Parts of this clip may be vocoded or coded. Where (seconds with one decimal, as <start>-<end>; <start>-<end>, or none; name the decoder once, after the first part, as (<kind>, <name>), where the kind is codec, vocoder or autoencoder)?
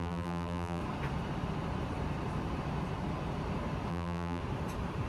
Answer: 0.0-0.8 (vocoder, BigVGAN v2); 3.9-4.4